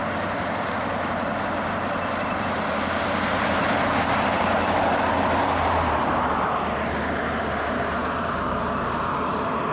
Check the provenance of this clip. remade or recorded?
remade